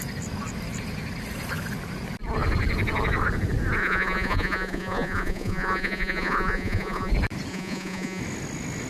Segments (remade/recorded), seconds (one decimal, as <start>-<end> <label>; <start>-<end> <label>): 0.0-3.8 recorded; 3.8-7.1 remade; 7.1-7.5 recorded; 7.5-8.2 remade; 8.2-8.9 recorded